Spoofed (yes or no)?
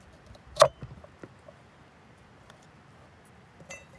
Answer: no